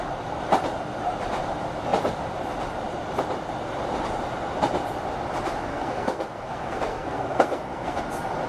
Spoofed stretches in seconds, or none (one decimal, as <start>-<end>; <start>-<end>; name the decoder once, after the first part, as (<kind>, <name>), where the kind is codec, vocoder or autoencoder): 5.7-8.0 (codec, SNAC)

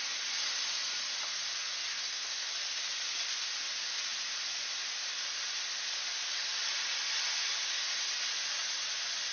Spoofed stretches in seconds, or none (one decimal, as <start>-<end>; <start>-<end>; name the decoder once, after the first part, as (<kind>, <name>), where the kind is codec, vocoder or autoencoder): 1.9-2.5 (codec, SNAC)

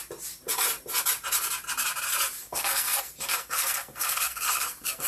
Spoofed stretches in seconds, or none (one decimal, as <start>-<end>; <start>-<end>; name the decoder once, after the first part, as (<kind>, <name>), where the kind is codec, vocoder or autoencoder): 2.4-5.1 (codec, SNAC)

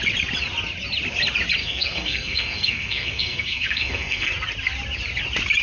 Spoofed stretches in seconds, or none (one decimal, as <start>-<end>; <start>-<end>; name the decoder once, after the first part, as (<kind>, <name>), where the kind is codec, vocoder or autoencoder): 1.6-4.3 (codec, SNAC)

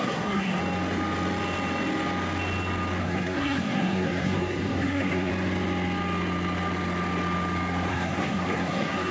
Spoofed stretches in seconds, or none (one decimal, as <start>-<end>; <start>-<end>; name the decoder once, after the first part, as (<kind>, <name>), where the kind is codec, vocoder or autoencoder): 0.0-0.6 (codec, SNAC); 3.0-5.3; 7.9-9.1

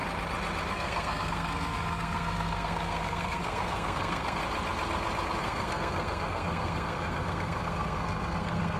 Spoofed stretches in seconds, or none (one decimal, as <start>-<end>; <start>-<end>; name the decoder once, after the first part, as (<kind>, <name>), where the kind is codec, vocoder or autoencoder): 0.7-4.4 (codec, SNAC); 5.4-8.8

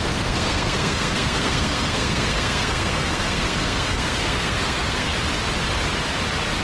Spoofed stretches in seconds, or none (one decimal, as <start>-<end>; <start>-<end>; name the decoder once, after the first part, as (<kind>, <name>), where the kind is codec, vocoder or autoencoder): 0.0-5.1 (codec, SNAC)